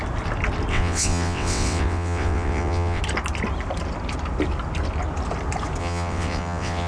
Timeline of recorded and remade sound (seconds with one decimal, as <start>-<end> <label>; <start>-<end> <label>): 0.0-0.7 recorded; 0.7-3.0 remade; 3.0-5.8 recorded; 5.8-6.9 remade